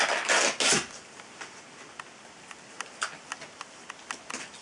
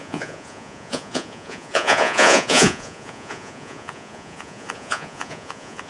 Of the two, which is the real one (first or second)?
first